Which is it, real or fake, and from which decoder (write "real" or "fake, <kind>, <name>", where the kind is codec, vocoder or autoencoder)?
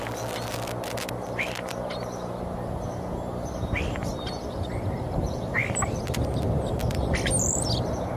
real